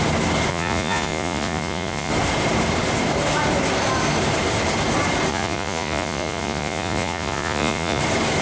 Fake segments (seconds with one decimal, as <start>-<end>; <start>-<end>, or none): 0.5-2.1; 5.3-8.0